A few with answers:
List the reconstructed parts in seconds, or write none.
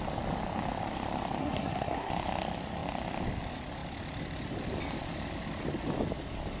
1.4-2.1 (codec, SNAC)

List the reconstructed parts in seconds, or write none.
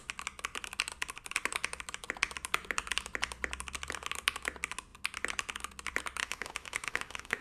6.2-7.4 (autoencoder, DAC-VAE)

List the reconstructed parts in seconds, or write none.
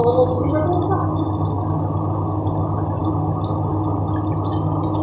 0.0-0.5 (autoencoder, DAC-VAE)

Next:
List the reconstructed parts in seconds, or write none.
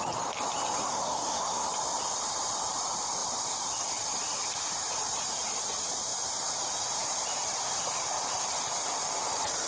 0.8-1.7 (codec, SNAC)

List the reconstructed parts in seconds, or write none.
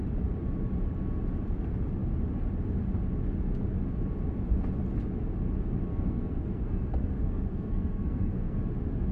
5.9-8.6 (codec, SNAC)